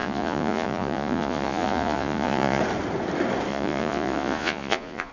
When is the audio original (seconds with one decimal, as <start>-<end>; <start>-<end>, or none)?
2.6-3.5